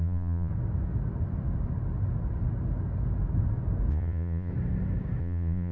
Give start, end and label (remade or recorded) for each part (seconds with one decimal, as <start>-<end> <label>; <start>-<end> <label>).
0.0-0.5 remade; 0.5-3.9 recorded; 3.9-4.5 remade; 4.5-5.2 recorded; 5.2-5.7 remade